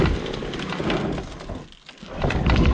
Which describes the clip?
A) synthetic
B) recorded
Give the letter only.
B